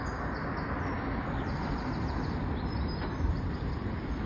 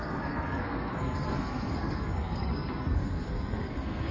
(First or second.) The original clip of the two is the first